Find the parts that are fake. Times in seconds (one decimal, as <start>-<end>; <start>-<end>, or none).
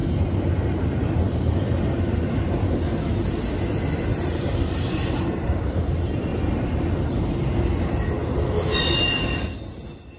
0.0-1.8; 4.1-5.5; 6.3-7.3